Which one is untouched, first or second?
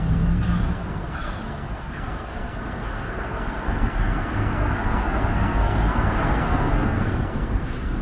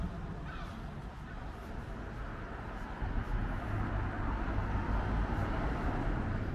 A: second